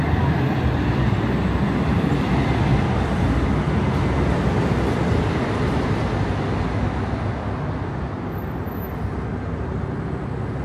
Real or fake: real